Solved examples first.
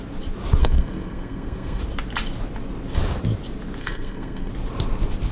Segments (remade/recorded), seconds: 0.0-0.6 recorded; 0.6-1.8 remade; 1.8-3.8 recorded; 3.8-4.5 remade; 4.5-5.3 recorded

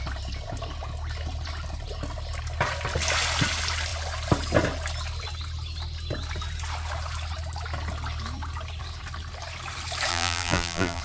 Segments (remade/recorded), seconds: 0.0-10.1 recorded; 10.1-11.0 remade

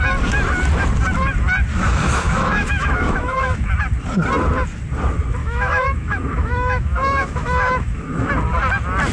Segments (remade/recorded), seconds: 0.0-1.7 recorded; 1.7-3.7 remade; 3.7-5.4 recorded; 5.4-8.3 remade; 8.3-9.1 recorded

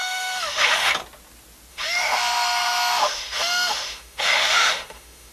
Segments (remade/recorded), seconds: 0.0-0.9 remade; 0.9-1.7 recorded; 1.7-5.3 remade